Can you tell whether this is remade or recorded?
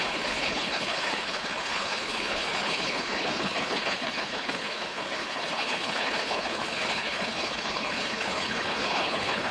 remade